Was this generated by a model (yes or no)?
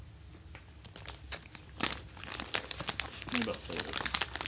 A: no